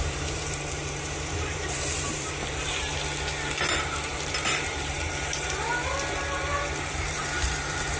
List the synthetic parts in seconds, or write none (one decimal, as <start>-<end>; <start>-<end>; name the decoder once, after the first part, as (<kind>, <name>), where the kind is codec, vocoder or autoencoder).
0.0-2.9 (vocoder, BigVGAN v2); 3.6-5.7; 6.8-8.0